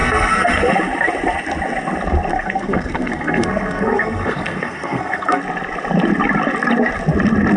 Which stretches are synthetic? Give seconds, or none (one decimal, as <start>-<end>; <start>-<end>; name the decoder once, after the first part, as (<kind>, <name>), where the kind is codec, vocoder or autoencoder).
0.0-0.5 (codec, SNAC); 2.3-5.4

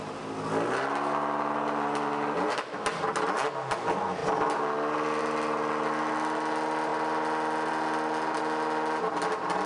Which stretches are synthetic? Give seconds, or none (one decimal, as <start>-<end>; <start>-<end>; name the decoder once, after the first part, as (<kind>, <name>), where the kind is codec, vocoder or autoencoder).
none

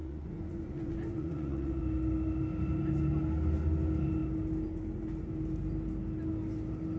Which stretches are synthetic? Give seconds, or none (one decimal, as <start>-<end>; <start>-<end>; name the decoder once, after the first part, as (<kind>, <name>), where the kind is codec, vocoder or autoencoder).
0.0-1.8 (vocoder, Vocos)

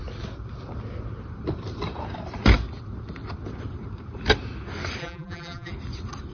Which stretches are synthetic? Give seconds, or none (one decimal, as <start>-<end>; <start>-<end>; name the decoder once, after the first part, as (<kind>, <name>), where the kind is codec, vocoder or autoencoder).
5.0-5.7 (vocoder, BigVGAN v2)

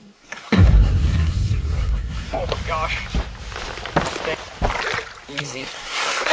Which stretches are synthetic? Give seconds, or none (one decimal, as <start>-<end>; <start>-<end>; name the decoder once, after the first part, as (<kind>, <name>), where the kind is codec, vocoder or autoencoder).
0.0-2.4 (codec, SNAC); 5.4-6.3

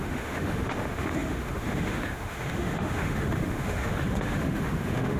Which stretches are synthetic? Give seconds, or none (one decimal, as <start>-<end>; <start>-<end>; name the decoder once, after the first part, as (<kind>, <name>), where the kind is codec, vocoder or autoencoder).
0.0-5.2 (autoencoder, DAC-VAE)

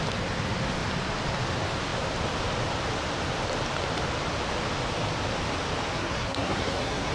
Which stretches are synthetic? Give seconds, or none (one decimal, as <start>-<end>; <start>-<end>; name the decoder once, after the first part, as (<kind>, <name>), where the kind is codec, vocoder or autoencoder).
5.9-7.1 (codec, SNAC)

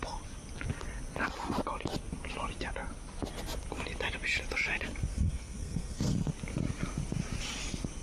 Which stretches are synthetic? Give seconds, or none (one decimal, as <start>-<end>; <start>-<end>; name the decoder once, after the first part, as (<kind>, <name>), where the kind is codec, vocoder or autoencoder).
5.1-6.3 (codec, SNAC)